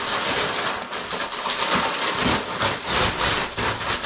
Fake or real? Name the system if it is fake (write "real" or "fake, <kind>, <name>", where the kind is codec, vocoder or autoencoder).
real